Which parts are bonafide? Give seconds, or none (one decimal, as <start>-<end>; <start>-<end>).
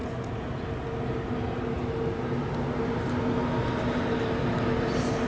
0.0-5.3